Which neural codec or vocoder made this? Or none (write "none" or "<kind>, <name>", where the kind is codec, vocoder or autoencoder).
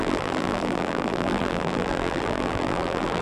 vocoder, BigVGAN v2